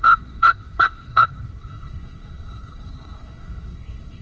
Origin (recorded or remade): remade